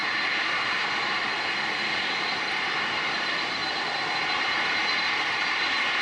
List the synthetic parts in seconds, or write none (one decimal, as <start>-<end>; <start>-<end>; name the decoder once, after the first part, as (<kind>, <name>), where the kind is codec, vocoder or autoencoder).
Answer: 2.0-3.6 (vocoder, BigVGAN v2); 4.2-6.0